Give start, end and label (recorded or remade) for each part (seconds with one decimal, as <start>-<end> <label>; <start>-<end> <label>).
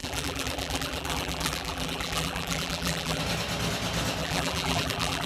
0.0-3.2 remade; 3.2-4.2 recorded; 4.2-5.3 remade